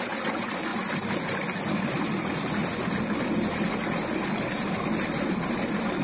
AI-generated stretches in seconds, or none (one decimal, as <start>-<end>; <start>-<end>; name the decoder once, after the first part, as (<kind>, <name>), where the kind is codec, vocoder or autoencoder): none